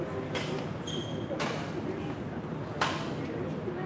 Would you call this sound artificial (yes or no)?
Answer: no